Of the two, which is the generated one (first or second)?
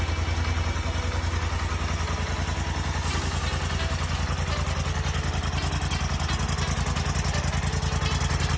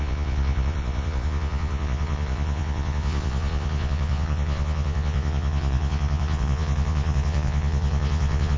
second